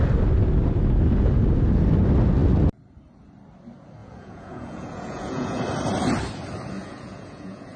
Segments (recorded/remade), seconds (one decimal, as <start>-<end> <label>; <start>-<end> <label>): 0.0-4.0 recorded; 4.0-5.6 remade; 5.6-6.8 recorded; 6.8-7.8 remade